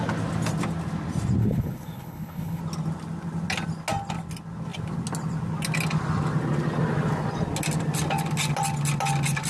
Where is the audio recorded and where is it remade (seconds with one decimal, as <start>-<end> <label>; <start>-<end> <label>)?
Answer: 0.0-1.4 recorded; 1.4-2.6 remade; 2.6-9.5 recorded